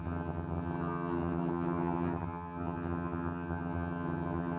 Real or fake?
fake